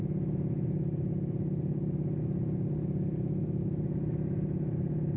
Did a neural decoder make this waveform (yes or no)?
no